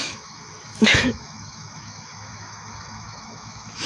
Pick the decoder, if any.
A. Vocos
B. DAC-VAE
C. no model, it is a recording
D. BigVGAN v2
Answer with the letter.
B